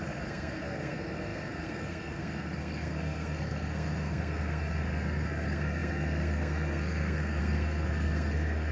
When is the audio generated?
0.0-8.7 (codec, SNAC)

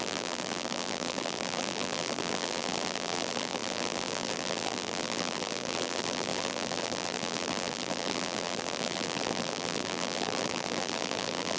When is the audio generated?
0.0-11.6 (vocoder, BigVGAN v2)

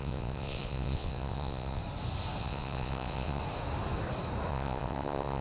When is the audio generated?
0.0-1.8 (vocoder, WaveNeXt); 2.4-3.4; 4.5-5.4

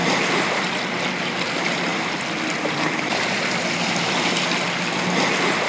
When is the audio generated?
0.0-0.9 (vocoder, BigVGAN v2); 1.9-3.4

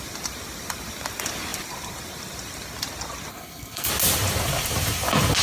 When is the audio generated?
3.3-3.9 (codec, SNAC)

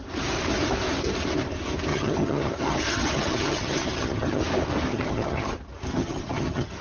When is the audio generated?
1.9-4.4 (vocoder, HiFi-GAN); 4.9-5.5; 5.9-6.8

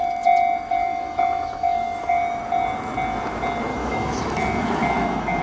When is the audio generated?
0.8-2.4 (autoencoder, DAC-VAE); 3.7-5.4

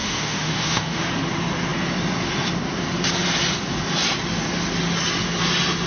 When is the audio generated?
0.0-1.1 (autoencoder, DAC-VAE)